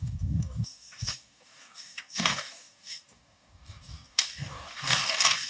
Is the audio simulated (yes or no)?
yes